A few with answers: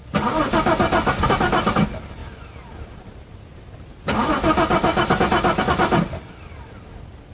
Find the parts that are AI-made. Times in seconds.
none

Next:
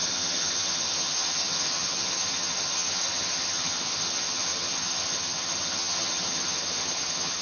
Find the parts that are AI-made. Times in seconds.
0.0-7.4 (vocoder, HiFi-GAN)

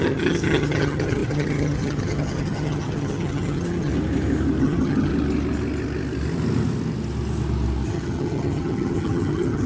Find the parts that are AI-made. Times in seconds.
0.0-3.9 (vocoder, HiFi-GAN); 4.6-5.1; 7.9-9.7

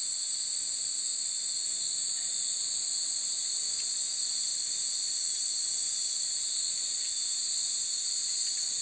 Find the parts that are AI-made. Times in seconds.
none

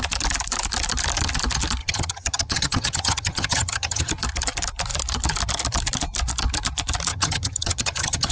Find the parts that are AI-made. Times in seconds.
1.8-4.1 (vocoder, HiFi-GAN); 7.1-8.3

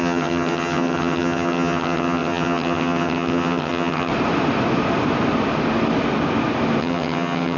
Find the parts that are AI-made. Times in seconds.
0.0-4.1 (vocoder, HiFi-GAN); 6.8-7.6

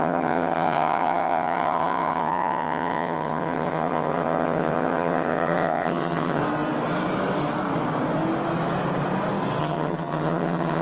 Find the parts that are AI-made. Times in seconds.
0.0-6.4 (vocoder, HiFi-GAN); 9.6-10.8

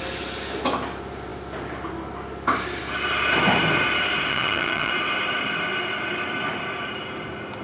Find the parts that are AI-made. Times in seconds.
4.3-4.9 (vocoder, HiFi-GAN)